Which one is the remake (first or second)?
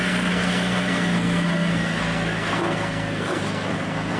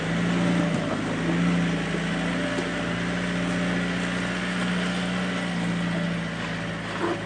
first